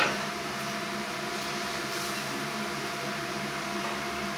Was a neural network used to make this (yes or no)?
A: yes